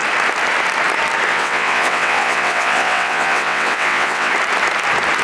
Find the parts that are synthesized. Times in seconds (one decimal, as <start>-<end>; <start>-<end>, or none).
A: 1.3-4.3